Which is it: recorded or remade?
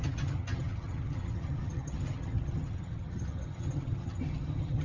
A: remade